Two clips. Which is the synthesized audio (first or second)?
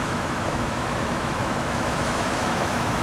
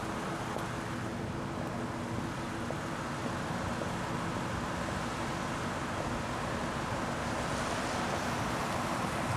first